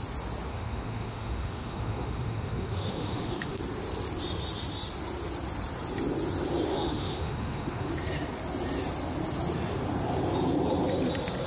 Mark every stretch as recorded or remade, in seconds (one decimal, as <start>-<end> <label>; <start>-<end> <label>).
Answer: 0.0-0.5 recorded; 0.5-3.6 remade; 3.6-6.7 recorded; 6.7-7.9 remade; 7.9-11.5 recorded